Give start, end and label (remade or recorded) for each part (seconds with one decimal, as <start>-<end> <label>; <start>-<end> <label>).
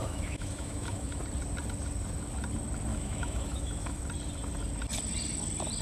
0.0-1.2 remade; 1.2-2.9 recorded; 2.9-4.0 remade; 4.0-5.8 recorded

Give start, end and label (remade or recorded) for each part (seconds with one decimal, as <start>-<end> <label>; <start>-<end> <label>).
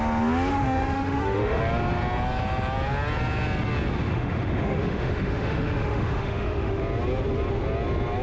0.0-0.5 recorded; 0.5-1.6 remade; 1.6-4.1 recorded; 4.1-6.8 remade; 6.8-8.2 recorded